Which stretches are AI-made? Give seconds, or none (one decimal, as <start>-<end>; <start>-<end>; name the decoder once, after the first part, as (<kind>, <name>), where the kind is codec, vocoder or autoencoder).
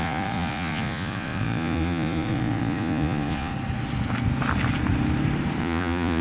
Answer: 0.0-3.5 (vocoder, Vocos); 5.6-6.2